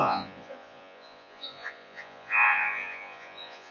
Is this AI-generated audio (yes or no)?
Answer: yes